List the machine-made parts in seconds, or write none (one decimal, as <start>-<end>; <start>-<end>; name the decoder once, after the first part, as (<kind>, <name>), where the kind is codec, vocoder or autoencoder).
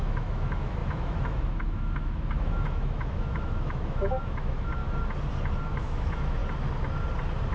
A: 0.0-4.8 (autoencoder, DAC-VAE); 5.6-6.4